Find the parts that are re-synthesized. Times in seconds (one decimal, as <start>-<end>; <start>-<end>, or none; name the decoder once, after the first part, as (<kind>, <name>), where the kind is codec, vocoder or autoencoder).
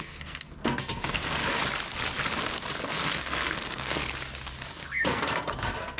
0.0-1.4 (codec, SNAC); 2.8-4.0; 4.6-6.0